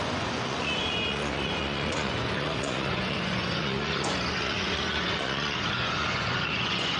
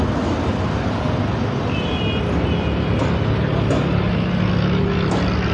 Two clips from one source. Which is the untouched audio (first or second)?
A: second